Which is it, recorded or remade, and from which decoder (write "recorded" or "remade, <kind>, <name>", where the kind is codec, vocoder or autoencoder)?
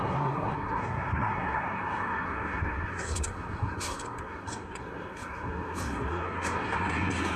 remade, codec, SNAC